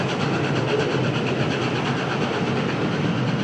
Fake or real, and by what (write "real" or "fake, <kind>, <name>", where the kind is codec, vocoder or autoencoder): real